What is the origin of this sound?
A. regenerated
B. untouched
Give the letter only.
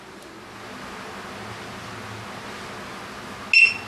B